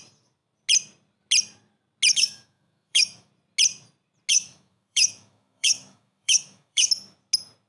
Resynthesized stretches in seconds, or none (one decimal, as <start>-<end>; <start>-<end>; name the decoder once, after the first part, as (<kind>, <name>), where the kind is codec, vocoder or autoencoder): 2.1-3.3 (autoencoder, DAC-VAE); 4.3-6.9